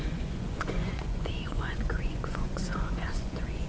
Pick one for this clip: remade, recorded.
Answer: remade